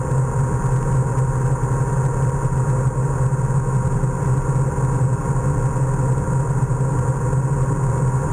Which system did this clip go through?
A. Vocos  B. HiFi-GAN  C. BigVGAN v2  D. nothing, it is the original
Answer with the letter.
D